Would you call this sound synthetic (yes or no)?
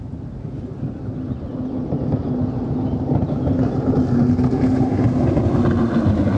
no